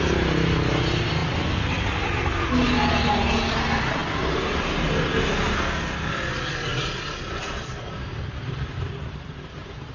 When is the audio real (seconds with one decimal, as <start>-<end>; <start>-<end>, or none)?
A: 0.0-9.9